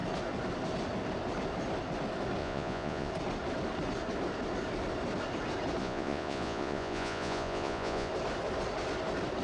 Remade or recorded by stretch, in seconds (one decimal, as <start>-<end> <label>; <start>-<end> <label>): 0.0-2.4 recorded; 2.4-3.1 remade; 3.1-5.8 recorded; 5.8-8.1 remade; 8.1-9.4 recorded